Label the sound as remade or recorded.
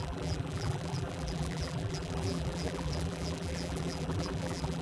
remade